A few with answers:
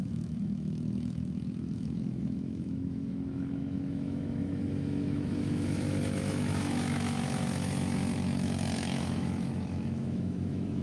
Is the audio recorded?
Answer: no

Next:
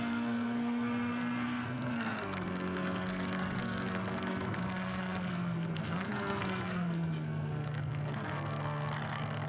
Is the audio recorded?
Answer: no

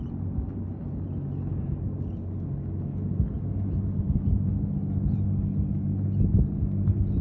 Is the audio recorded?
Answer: yes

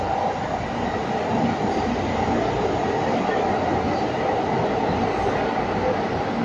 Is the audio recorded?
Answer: yes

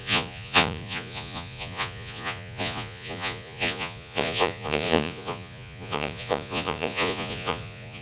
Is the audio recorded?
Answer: no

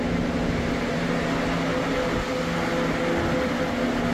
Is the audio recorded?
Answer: yes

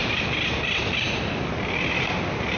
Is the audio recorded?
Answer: yes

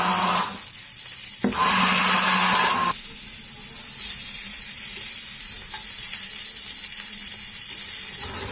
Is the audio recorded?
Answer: yes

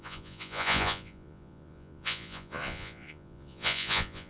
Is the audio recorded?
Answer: no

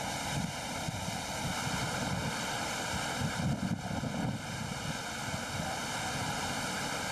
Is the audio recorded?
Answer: yes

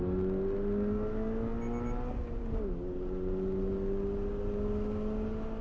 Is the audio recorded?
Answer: yes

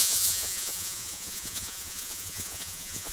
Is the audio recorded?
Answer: no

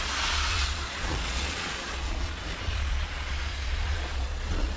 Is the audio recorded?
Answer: no